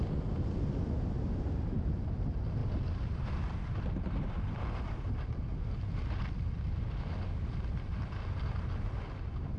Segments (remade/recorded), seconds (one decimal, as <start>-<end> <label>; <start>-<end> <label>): 0.0-9.6 recorded